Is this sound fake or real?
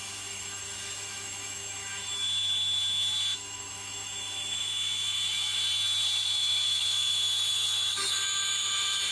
fake